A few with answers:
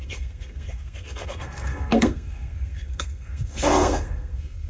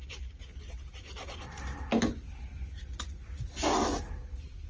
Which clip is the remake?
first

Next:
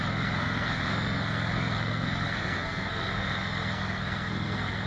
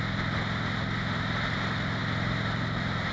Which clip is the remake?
first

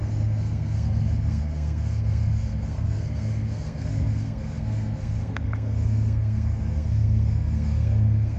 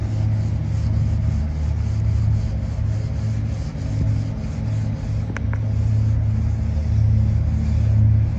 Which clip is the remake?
first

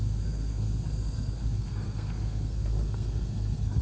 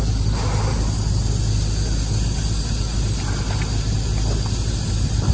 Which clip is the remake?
first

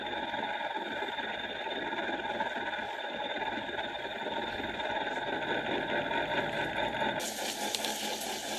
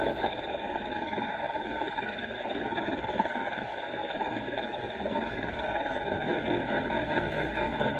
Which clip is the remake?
second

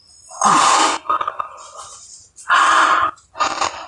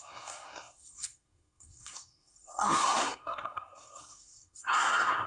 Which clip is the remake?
second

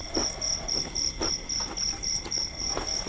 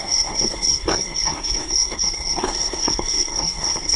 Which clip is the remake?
second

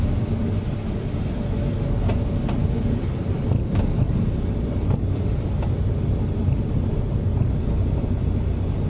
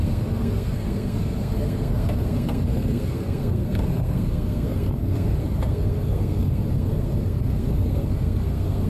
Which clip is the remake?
second